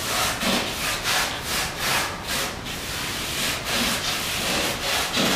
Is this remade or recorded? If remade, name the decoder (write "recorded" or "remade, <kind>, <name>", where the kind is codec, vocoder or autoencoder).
recorded